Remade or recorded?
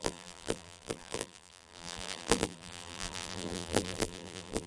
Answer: remade